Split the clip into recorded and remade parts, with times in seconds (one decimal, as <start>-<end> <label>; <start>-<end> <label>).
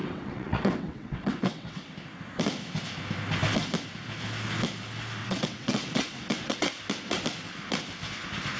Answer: 0.0-1.9 remade; 1.9-5.2 recorded; 5.2-6.7 remade; 6.7-8.6 recorded